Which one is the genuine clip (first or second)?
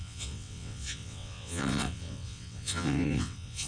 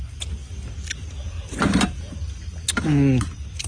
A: second